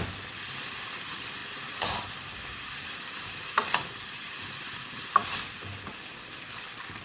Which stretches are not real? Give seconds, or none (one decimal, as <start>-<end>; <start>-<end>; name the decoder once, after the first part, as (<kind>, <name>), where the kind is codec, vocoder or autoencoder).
0.0-5.2 (vocoder, BigVGAN v2); 6.1-7.0